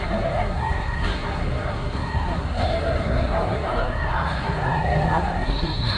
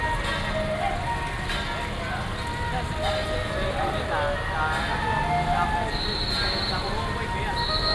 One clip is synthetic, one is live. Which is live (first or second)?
second